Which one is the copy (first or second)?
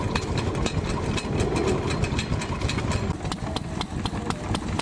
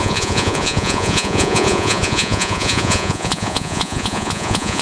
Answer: second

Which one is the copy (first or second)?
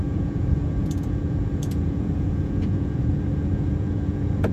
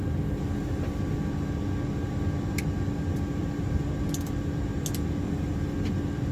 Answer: first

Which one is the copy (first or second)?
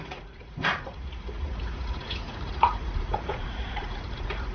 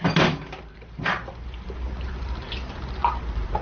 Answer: first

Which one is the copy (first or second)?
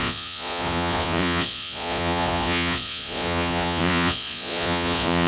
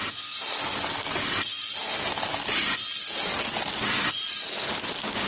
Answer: first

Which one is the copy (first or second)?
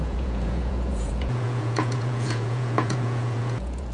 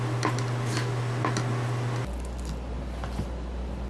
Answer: first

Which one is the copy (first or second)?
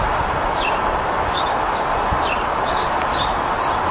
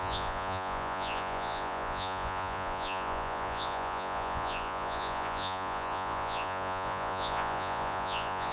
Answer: second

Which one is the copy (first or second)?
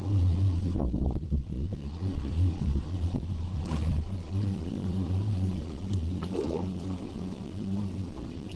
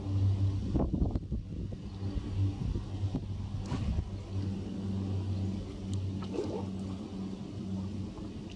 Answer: first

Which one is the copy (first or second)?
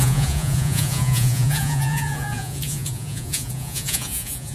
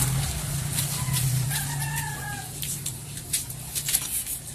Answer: first